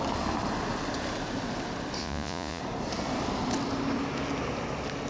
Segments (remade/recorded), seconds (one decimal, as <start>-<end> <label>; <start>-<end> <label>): 0.0-2.0 recorded; 2.0-2.6 remade; 2.6-5.1 recorded